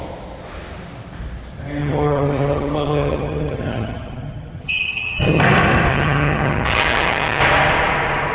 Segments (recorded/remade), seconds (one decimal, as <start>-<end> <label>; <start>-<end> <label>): 0.0-1.8 recorded; 1.8-5.4 remade; 5.4-5.9 recorded; 5.9-7.4 remade; 7.4-8.3 recorded